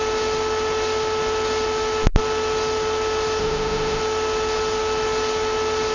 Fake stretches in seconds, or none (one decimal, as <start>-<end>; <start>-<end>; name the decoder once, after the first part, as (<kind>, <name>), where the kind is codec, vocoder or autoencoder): 3.4-4.0 (autoencoder, DAC-VAE)